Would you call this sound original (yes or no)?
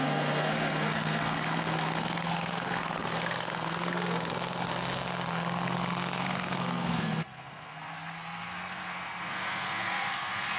no